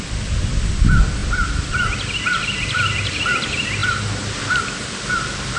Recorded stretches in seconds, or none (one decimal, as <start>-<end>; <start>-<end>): 1.2-2.2; 3.8-5.1